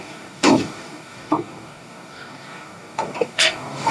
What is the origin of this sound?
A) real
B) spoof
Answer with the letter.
B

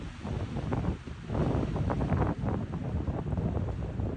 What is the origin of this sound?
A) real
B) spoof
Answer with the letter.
A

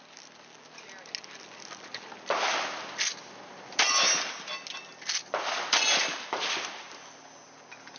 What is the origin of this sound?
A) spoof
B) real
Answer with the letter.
B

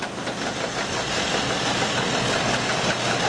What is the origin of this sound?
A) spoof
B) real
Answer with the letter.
B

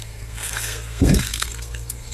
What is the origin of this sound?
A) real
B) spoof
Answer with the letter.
B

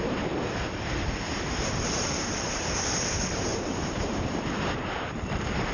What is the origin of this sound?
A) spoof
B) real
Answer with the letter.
A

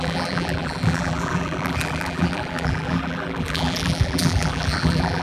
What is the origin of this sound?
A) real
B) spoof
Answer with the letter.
B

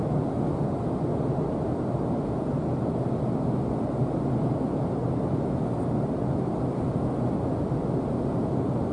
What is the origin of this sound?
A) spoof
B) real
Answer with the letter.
B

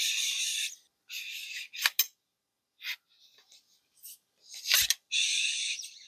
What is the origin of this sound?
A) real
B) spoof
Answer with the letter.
A